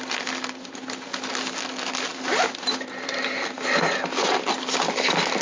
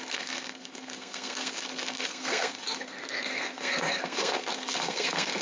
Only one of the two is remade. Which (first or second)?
second